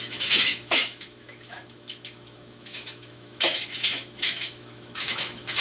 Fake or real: fake